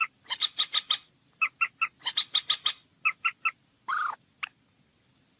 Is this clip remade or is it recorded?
recorded